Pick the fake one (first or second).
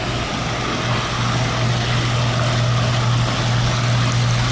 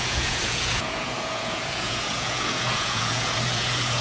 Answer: second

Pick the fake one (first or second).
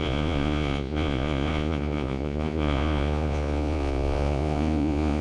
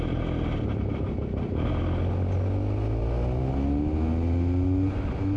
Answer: first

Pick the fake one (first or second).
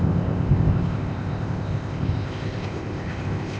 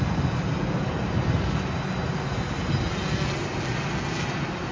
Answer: first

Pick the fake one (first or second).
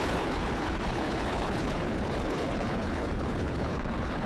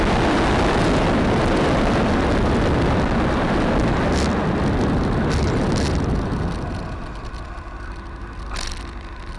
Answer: first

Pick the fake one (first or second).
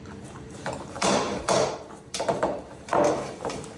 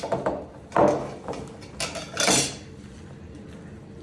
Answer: first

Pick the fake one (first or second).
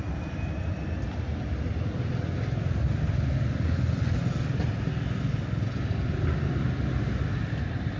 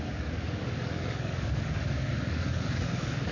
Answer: second